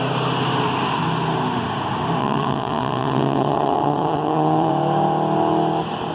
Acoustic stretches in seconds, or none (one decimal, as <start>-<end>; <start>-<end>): 0.0-2.2; 4.7-6.1

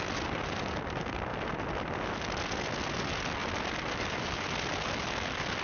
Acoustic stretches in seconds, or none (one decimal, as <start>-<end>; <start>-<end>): 0.0-5.6

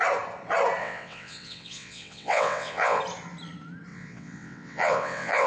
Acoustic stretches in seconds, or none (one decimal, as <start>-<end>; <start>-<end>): 0.0-0.8; 3.0-3.9

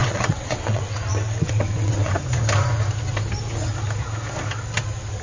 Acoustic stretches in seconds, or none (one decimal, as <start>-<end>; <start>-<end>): 2.1-5.2